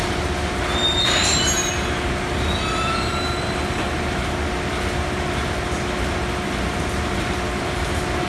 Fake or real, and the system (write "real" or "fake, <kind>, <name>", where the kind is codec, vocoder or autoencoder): real